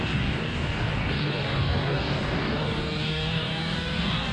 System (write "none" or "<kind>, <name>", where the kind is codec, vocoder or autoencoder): codec, DAC